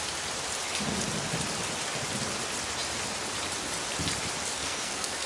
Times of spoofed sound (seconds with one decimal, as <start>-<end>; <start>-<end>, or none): 4.5-5.3